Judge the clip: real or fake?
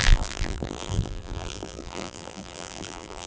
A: fake